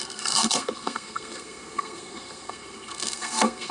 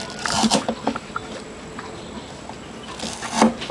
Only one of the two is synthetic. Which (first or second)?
first